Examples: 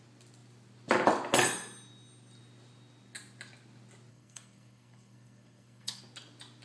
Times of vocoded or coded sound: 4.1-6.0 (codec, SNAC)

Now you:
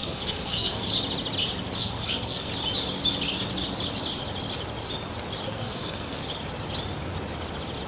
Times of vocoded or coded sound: 0.0-0.9 (codec, SNAC); 1.8-2.5; 5.4-6.2

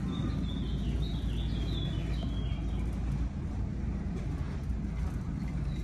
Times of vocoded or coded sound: none

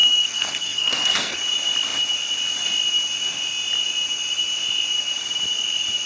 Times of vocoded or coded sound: 0.0-1.4 (codec, SNAC)

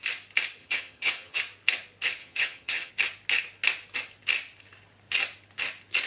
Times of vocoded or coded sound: 0.6-1.4 (vocoder, HiFi-GAN); 2.2-2.9

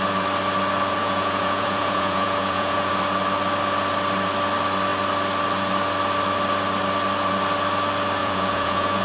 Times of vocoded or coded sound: 1.0-2.9 (vocoder, Vocos); 8.2-9.0

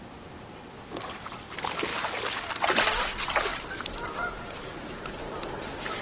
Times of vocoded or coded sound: 0.0-1.9 (vocoder, BigVGAN v2); 3.0-6.0